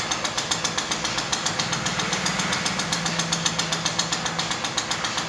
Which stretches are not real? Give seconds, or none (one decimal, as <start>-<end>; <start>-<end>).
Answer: none